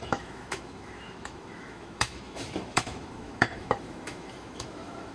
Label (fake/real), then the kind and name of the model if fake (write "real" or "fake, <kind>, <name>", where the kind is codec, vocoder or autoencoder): fake, autoencoder, DAC-VAE